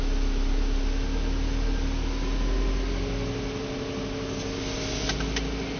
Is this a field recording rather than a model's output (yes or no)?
yes